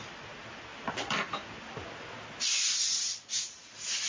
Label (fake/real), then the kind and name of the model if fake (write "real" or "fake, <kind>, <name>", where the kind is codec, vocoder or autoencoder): real